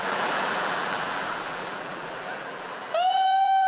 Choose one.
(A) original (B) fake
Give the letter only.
B